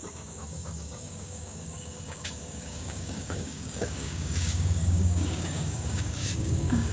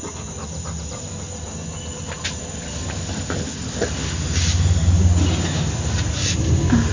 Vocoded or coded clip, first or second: first